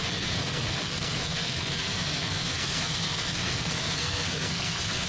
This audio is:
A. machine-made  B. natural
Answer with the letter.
A